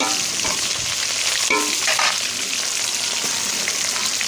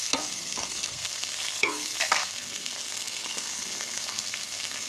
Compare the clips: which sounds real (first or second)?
first